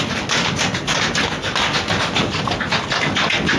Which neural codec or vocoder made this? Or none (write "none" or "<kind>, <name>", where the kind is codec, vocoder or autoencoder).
none